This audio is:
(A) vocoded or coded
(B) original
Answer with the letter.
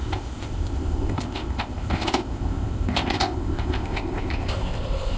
A